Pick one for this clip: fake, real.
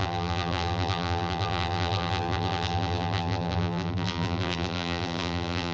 fake